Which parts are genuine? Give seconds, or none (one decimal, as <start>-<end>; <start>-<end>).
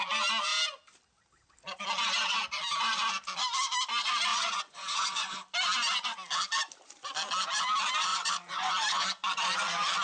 0.0-4.3; 5.4-8.1; 8.7-10.0